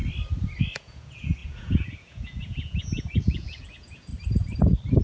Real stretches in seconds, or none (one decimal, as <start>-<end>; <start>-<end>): 0.0-0.6; 4.1-5.0